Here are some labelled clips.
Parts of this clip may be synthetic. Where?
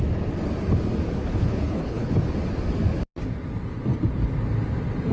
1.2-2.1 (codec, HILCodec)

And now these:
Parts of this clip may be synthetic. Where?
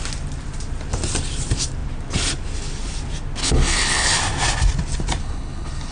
3.4-4.2 (codec, HILCodec); 5.2-5.9